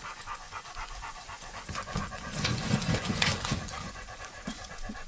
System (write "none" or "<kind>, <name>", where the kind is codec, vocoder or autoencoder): vocoder, Vocos